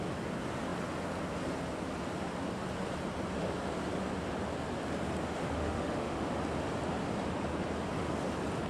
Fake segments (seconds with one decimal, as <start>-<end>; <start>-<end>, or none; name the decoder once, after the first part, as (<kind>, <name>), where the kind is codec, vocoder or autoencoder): 5.6-6.2 (autoencoder, DAC-VAE)